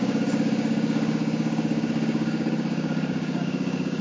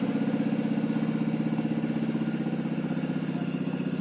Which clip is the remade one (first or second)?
first